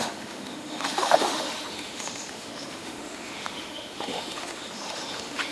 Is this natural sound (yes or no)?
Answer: no